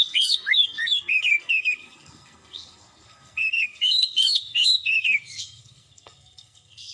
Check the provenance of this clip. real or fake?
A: fake